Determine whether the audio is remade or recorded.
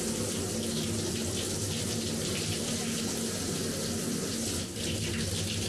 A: recorded